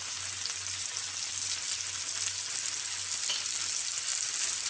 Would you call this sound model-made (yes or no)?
no